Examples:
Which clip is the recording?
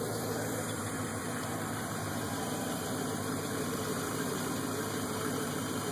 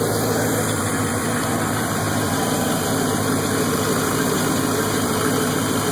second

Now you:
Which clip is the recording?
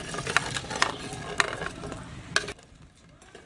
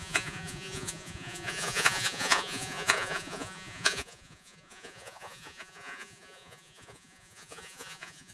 first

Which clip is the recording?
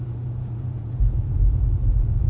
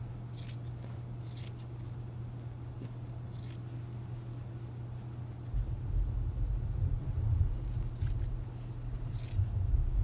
second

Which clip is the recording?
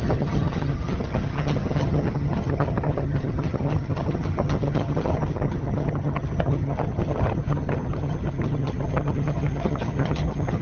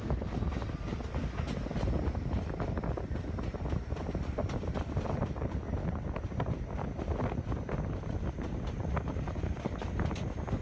second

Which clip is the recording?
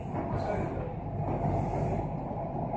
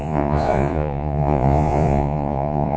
first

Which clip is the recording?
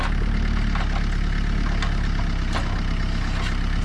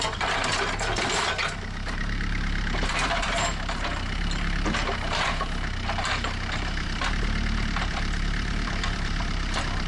first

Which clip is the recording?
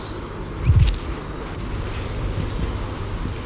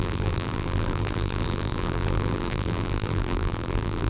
first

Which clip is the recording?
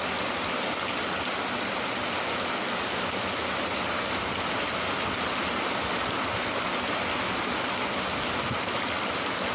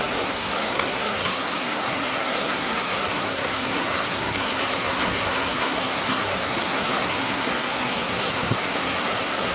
first